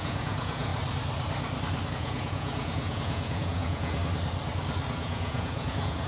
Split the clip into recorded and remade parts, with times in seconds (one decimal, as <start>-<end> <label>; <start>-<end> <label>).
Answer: 0.0-0.7 remade; 0.7-1.9 recorded; 1.9-4.0 remade; 4.0-4.9 recorded; 4.9-6.1 remade